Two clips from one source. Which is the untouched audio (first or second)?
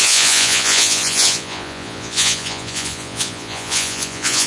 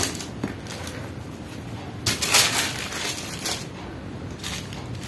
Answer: second